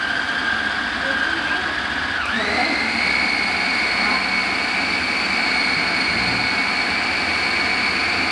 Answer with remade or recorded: recorded